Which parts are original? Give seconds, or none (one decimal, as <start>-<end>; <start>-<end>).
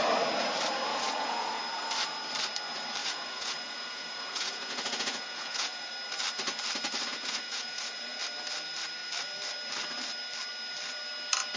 0.0-0.9; 1.6-3.0; 5.9-7.1; 8.2-11.6